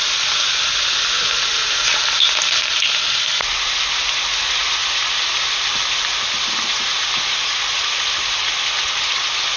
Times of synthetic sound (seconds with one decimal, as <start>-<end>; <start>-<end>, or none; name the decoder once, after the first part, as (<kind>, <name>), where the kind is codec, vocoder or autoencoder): 4.8-5.5 (vocoder, BigVGAN v2)